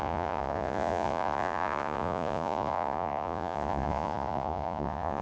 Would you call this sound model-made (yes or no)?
yes